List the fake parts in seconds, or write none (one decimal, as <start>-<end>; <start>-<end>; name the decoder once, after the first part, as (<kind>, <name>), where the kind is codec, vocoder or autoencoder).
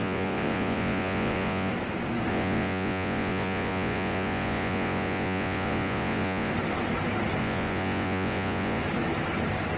0.0-1.7 (vocoder, Vocos); 2.3-6.5; 7.4-8.8